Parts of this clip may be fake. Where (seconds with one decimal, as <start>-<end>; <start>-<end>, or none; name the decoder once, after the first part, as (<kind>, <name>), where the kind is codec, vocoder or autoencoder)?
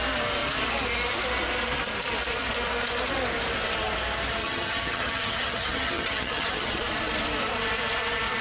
4.4-6.8 (vocoder, HiFi-GAN)